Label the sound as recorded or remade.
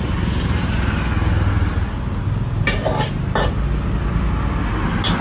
recorded